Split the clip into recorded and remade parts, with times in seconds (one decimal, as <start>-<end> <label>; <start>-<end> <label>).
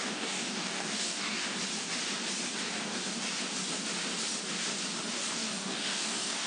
0.0-1.4 remade; 1.4-5.3 recorded; 5.3-6.5 remade